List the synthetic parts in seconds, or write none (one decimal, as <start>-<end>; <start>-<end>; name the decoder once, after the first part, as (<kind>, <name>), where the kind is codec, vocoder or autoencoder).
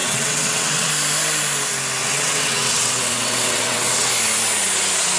0.0-0.9 (vocoder, WaveNeXt); 2.0-4.1